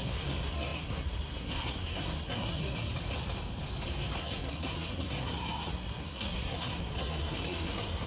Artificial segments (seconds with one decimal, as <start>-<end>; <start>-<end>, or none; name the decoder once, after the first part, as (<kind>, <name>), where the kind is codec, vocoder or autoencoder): 0.0-2.9 (codec, SNAC); 4.2-8.1